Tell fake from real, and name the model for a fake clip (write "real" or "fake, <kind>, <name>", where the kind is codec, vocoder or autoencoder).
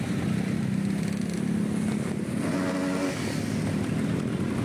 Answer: real